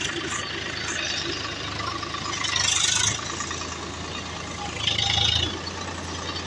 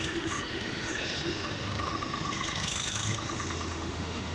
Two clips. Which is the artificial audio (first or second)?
second